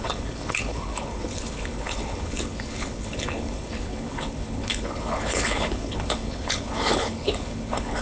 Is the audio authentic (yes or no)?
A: no